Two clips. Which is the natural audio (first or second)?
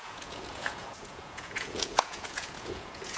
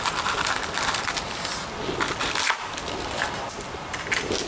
second